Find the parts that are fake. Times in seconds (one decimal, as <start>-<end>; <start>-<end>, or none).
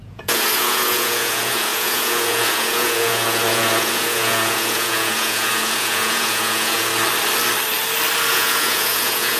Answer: 0.0-6.9; 8.3-9.4